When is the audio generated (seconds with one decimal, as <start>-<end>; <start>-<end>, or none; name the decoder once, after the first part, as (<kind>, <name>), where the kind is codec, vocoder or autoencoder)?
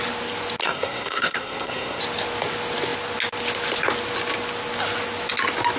0.6-2.0 (codec, SNAC)